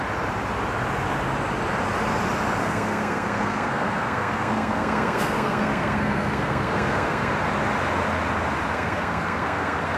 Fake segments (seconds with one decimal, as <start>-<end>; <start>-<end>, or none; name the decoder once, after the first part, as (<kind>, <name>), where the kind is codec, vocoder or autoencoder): 2.6-7.3 (codec, SNAC); 8.7-10.0